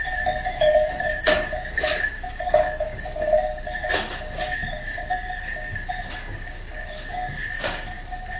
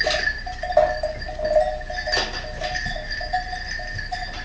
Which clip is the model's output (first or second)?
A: first